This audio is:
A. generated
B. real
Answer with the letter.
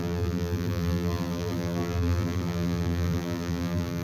A